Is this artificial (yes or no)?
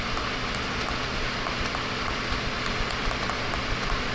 yes